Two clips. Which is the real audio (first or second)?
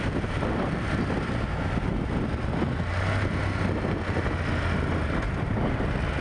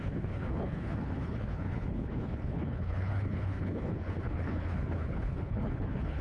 first